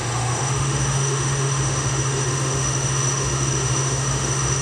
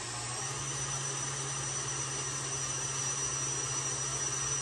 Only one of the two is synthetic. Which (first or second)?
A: first